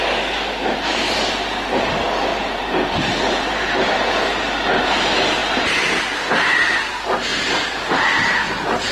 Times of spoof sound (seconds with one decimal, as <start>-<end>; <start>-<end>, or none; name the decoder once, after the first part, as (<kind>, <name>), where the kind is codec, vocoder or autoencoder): 2.3-4.1 (vocoder, BigVGAN v2); 7.3-7.8